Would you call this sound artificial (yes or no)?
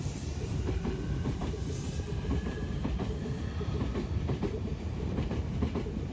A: yes